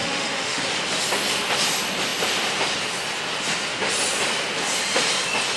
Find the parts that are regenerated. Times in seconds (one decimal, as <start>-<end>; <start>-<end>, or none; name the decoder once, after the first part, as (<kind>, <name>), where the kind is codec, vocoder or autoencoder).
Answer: 0.0-0.6 (autoencoder, DAC-VAE)